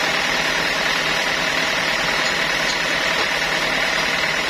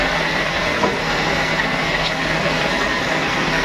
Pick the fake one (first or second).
second